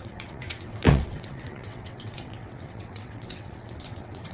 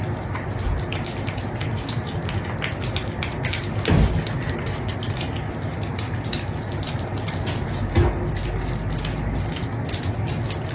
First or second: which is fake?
first